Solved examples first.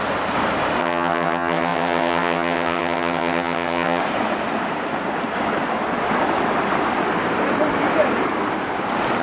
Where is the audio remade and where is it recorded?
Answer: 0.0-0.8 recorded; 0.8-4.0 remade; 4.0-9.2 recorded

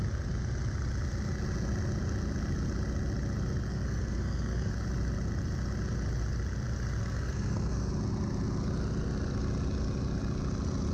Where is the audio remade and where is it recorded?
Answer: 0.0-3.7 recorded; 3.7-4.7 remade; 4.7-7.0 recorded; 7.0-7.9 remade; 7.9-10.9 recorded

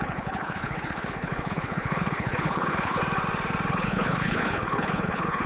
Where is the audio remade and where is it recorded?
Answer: 0.0-3.0 remade; 3.0-3.7 recorded; 3.7-5.5 remade